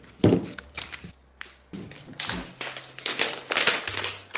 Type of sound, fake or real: real